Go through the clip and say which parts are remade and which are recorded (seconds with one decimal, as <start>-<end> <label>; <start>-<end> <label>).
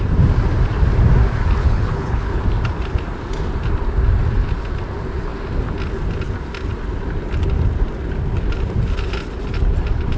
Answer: 0.0-1.6 recorded; 1.6-2.4 remade; 2.4-10.2 recorded